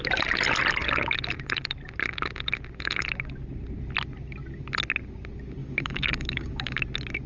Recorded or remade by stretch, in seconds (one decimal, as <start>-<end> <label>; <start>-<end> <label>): 0.0-5.6 recorded; 5.6-6.8 remade; 6.8-7.3 recorded